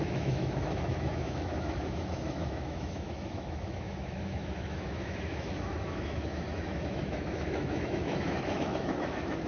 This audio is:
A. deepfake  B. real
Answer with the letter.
A